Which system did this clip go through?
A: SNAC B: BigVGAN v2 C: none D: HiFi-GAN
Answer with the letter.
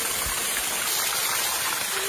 C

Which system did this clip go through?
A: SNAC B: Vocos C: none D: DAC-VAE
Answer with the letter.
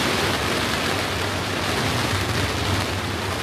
C